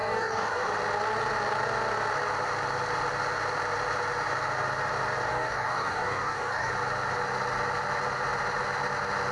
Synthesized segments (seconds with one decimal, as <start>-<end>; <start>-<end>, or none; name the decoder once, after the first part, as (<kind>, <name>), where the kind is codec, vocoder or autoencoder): 0.0-0.7 (codec, DAC); 5.3-6.7